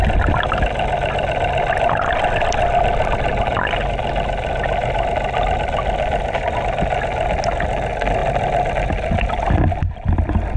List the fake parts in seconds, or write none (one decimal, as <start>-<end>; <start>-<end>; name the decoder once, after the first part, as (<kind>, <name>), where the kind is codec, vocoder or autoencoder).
none